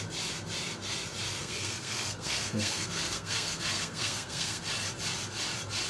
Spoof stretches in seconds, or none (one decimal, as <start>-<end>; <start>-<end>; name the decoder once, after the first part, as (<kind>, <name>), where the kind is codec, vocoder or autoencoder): 1.4-4.6 (codec, SNAC)